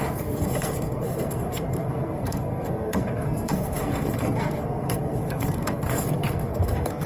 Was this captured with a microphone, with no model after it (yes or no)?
no